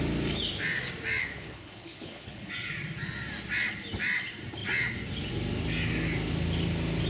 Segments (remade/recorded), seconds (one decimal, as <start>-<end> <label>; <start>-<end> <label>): 0.0-1.2 recorded; 1.2-2.5 remade; 2.5-7.1 recorded